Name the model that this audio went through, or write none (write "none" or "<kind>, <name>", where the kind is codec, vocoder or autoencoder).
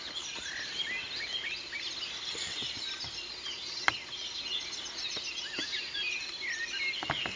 none